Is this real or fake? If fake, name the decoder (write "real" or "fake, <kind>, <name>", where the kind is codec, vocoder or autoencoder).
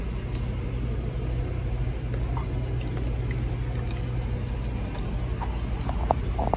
real